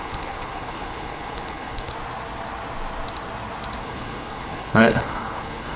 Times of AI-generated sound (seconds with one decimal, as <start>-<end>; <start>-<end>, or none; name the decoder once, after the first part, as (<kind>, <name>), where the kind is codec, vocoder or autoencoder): 0.0-1.9 (codec, HILCodec); 3.8-5.8